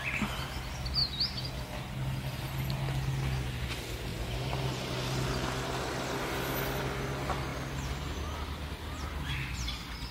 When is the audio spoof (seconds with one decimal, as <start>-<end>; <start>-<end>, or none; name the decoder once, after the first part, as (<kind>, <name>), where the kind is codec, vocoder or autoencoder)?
none